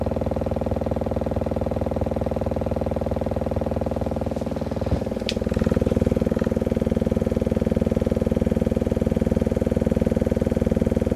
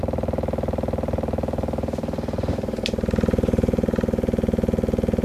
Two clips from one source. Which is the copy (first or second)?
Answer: second